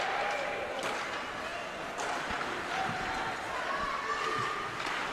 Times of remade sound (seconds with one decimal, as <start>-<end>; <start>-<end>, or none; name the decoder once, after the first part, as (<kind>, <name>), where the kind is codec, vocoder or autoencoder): none